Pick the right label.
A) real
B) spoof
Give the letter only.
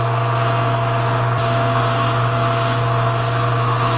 A